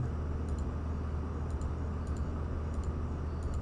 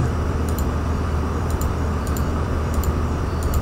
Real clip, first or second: first